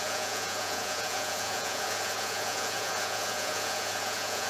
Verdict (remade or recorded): remade